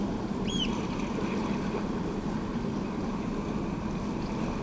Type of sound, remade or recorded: recorded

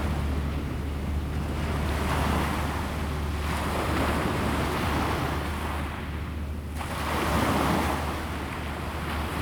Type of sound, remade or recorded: recorded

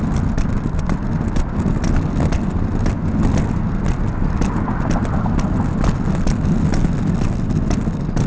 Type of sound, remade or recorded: recorded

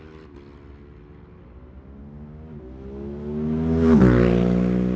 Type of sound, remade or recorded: recorded